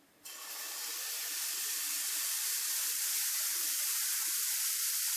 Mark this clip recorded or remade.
remade